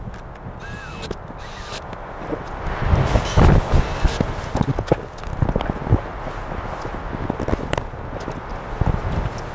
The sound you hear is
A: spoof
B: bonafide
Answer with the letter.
B